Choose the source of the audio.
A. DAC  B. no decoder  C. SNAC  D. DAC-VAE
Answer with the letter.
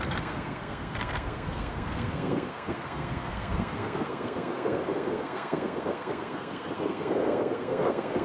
C